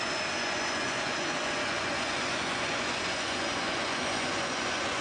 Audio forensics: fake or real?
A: fake